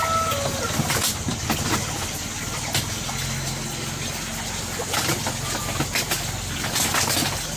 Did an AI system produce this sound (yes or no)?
no